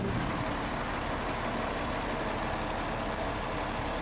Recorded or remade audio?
recorded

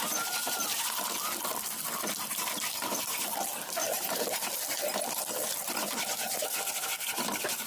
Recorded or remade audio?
recorded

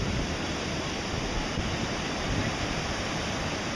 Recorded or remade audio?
recorded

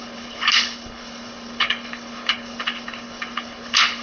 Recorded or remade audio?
remade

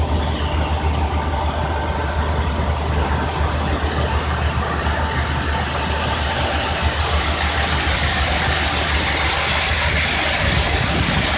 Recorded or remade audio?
recorded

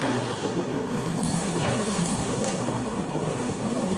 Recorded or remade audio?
remade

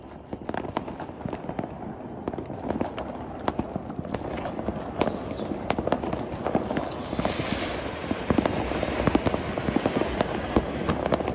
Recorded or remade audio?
recorded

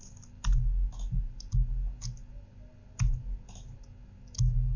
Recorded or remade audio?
recorded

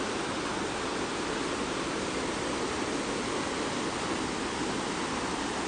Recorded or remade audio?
recorded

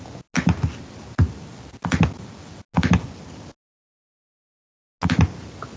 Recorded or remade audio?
recorded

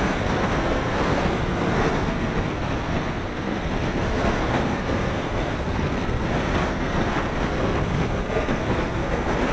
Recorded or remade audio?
remade